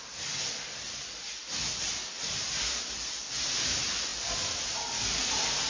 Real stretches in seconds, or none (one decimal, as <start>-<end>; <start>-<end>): none

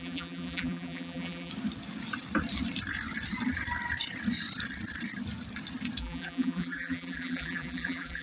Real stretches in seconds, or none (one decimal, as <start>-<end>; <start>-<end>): 1.5-6.0